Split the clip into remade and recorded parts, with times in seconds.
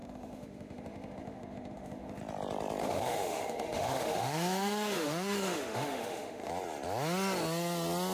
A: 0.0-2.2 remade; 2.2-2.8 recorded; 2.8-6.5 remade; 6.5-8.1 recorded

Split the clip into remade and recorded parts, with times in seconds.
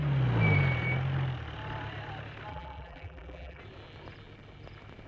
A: 0.0-2.5 recorded; 2.5-3.6 remade; 3.6-5.1 recorded